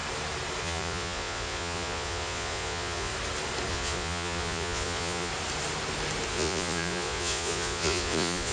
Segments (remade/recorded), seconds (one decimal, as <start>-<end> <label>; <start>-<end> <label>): 0.0-0.6 recorded; 0.6-3.1 remade; 3.1-3.7 recorded; 3.7-5.3 remade; 5.3-6.3 recorded; 6.3-8.5 remade